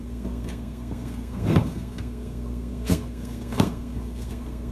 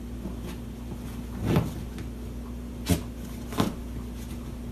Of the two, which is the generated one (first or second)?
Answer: first